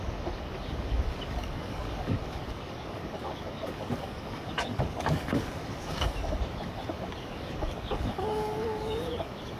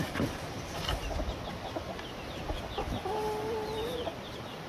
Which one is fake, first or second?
first